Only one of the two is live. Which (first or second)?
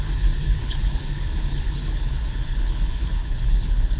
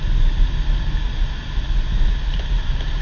second